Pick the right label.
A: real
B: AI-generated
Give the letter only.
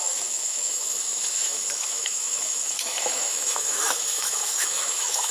B